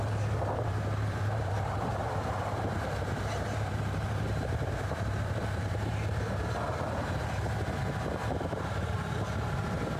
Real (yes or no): no